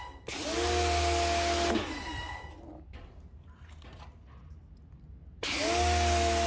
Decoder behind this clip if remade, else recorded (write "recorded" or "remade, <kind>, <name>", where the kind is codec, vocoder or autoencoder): recorded